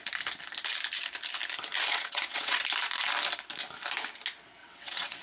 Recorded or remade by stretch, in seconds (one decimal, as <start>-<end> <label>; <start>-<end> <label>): 0.0-1.9 recorded; 1.9-2.6 remade; 2.6-4.6 recorded; 4.6-5.2 remade

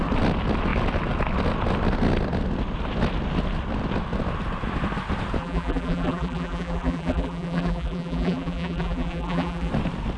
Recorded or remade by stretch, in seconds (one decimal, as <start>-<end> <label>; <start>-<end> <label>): 0.0-5.4 recorded; 5.4-9.7 remade; 9.7-10.2 recorded

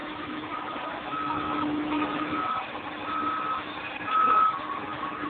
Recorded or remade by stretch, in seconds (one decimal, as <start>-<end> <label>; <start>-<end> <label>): 0.0-0.5 remade; 0.5-1.1 recorded; 1.1-2.5 remade; 2.5-5.3 recorded

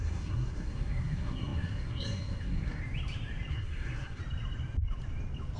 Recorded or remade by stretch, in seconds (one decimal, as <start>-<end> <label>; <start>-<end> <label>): 0.0-2.8 remade; 2.8-3.5 recorded; 3.5-4.2 remade; 4.2-5.6 recorded